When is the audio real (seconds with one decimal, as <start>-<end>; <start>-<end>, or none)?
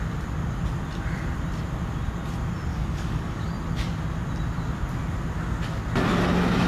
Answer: 0.0-2.7; 3.5-6.7